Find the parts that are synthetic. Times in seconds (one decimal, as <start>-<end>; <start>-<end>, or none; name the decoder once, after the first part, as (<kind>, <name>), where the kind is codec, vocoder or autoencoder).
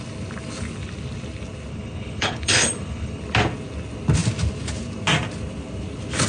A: 1.7-3.2 (codec, HILCodec)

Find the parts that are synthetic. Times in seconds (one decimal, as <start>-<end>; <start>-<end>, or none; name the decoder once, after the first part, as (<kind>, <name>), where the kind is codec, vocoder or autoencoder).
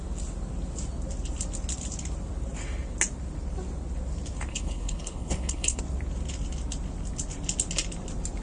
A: 4.5-5.8 (codec, HILCodec)